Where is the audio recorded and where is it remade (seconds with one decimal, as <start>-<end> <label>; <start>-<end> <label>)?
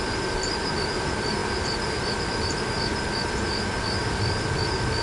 0.0-5.0 recorded